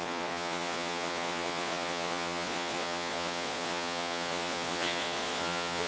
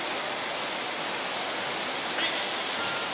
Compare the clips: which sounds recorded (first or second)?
second